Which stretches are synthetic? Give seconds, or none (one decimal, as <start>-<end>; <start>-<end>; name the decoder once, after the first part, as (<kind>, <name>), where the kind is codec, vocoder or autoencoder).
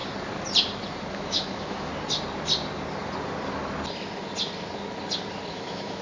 1.1-1.9 (autoencoder, DAC-VAE); 5.5-6.0